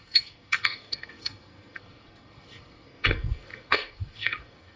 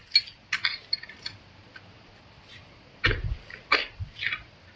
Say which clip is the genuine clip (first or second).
second